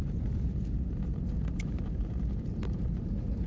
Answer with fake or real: fake